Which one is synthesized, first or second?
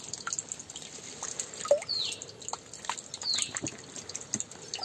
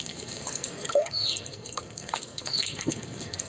second